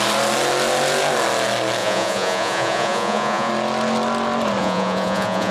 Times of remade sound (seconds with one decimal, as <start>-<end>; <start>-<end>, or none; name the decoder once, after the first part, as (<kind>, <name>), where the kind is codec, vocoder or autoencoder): 1.8-3.5 (vocoder, Vocos); 4.6-5.5